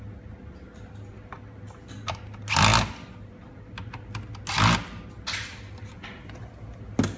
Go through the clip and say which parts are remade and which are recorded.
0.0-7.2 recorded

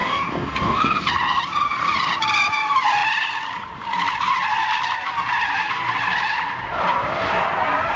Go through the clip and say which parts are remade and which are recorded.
0.0-1.0 remade; 1.0-8.0 recorded

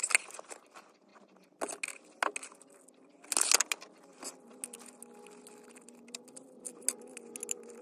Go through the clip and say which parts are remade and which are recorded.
0.0-7.8 recorded

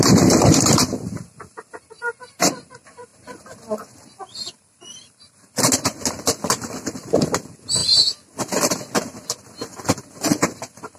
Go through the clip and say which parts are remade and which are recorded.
0.0-11.0 recorded